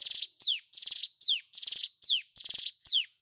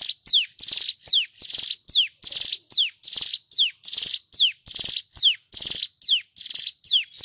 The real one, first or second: second